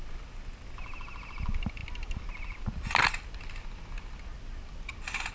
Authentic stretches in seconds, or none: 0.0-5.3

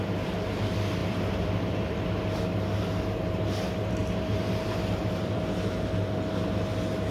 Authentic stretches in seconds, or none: 0.0-1.0; 2.0-4.0; 5.4-7.1

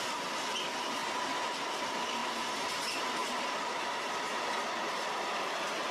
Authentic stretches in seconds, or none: 0.0-1.0; 1.8-2.2; 2.7-3.2; 4.7-5.9

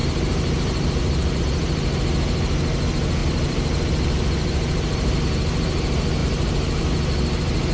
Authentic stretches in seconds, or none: 1.4-3.2; 5.2-6.2; 6.8-7.7

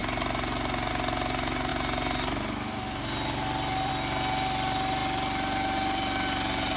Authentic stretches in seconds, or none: 0.0-1.7; 3.9-6.8

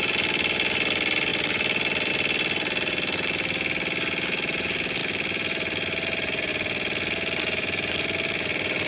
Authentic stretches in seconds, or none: 0.0-1.3; 2.1-5.0; 6.5-8.9